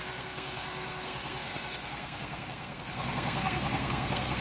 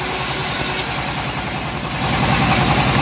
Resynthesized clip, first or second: first